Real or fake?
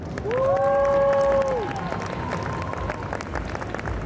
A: real